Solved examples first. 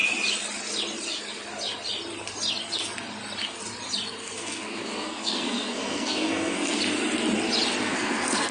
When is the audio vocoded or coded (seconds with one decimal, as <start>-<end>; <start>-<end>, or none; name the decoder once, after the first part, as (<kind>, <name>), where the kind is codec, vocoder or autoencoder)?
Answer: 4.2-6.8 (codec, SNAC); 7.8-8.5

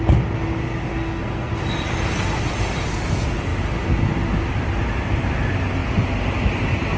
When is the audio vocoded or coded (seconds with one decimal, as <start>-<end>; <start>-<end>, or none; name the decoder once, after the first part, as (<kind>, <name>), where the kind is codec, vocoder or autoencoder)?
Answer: 0.9-1.5 (codec, SNAC)

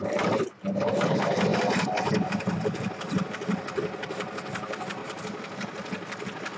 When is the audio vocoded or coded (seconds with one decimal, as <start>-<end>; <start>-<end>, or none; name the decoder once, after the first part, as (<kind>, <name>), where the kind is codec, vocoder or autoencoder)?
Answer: 0.0-5.0 (vocoder, BigVGAN v2)

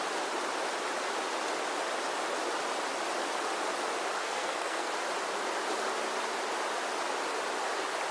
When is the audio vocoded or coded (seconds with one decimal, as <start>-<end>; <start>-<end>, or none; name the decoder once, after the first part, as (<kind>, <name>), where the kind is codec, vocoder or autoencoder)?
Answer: 4.2-4.9 (codec, SNAC)

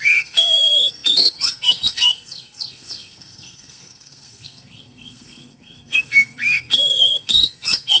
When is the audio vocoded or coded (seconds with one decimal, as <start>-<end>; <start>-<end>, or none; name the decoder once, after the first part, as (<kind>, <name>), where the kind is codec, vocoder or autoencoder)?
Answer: 0.0-8.0 (codec, SNAC)

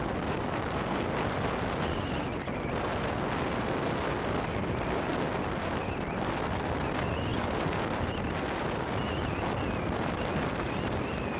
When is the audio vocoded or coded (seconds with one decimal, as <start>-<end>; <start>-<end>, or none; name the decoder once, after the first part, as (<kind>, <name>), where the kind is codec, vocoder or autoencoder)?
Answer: none

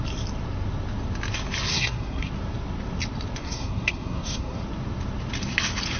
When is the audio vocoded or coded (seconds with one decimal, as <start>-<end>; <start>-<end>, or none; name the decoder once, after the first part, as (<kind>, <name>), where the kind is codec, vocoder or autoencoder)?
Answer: 1.7-2.3 (codec, SNAC); 3.4-4.6

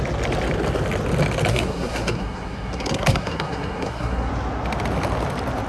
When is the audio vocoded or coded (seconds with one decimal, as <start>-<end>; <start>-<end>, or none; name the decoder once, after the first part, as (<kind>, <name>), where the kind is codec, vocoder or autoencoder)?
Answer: 1.5-4.3 (codec, SNAC)